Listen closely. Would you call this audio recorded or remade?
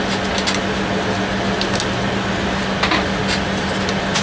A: recorded